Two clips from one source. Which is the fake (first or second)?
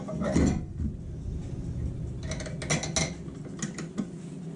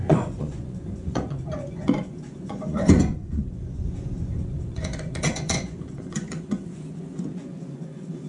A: second